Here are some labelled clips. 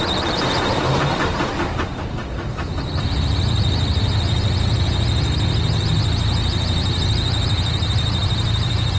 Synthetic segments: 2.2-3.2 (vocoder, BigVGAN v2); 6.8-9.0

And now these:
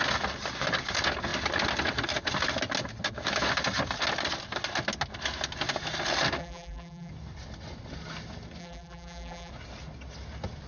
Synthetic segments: 6.4-7.1 (vocoder, BigVGAN v2); 8.6-9.5

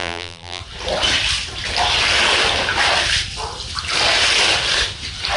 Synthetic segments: 0.0-0.6 (vocoder, BigVGAN v2)

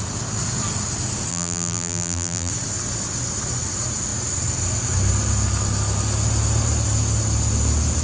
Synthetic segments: 1.3-2.5 (vocoder, BigVGAN v2)

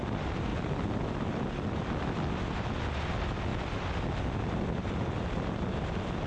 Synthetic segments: 0.5-2.4 (vocoder, BigVGAN v2); 3.5-6.3